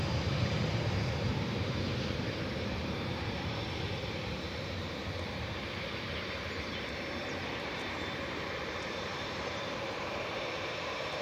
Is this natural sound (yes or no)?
no